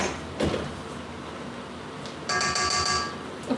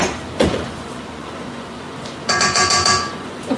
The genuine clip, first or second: first